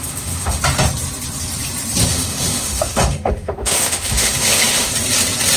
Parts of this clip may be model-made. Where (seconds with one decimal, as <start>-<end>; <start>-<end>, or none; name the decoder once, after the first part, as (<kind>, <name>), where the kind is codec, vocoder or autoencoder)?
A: 0.0-0.6 (autoencoder, DAC-VAE); 2.1-4.9